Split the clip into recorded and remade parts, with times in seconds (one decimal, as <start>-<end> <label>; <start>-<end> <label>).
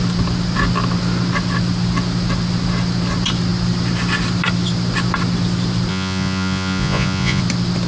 0.0-5.9 recorded; 5.9-7.4 remade; 7.4-7.9 recorded